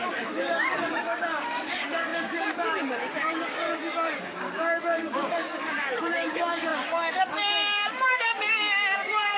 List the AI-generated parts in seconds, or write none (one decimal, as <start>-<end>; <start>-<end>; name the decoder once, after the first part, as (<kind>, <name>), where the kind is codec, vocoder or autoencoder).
0.0-9.4 (codec, DAC)